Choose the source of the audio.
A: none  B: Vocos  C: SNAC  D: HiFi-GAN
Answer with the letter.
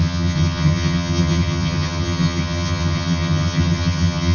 D